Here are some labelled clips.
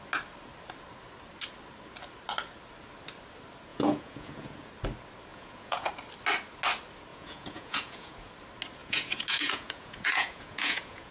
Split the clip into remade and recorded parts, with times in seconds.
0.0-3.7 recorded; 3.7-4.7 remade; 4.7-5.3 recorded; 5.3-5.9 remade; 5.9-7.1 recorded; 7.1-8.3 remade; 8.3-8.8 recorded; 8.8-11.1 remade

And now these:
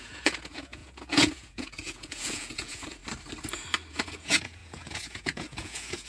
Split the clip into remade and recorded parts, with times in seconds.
0.0-3.0 remade; 3.0-3.9 recorded; 3.9-6.1 remade